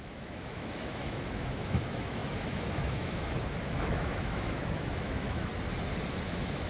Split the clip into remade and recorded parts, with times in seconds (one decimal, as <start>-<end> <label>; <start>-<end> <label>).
0.0-5.5 remade; 5.5-6.1 recorded; 6.1-6.7 remade